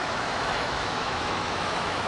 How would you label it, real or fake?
fake